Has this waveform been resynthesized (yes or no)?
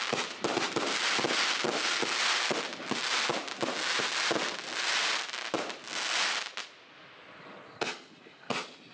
no